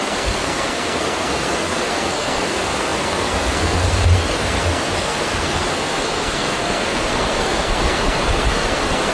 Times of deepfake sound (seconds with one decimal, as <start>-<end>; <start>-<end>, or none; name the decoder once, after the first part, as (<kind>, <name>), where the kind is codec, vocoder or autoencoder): 0.0-9.1 (codec, SNAC)